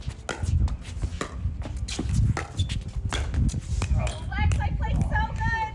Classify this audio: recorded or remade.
recorded